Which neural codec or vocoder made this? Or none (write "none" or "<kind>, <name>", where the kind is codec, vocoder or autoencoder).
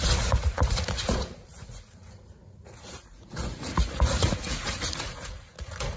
vocoder, Vocos